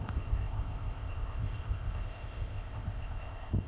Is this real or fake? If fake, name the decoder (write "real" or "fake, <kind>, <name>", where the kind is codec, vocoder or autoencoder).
fake, codec, ZipCodec